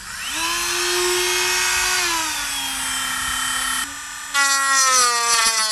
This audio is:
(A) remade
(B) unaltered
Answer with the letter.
B